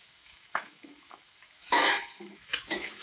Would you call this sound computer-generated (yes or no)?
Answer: yes